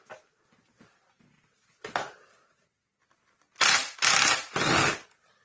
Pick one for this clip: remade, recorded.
recorded